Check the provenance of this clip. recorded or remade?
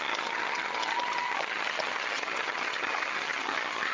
remade